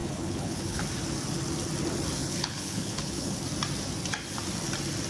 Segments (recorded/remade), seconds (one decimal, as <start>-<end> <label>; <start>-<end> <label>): 0.0-0.8 remade; 0.8-2.2 recorded; 2.2-3.4 remade; 3.4-5.1 recorded